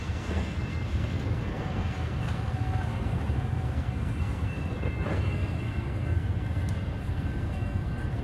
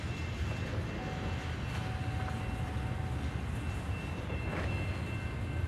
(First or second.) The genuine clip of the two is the second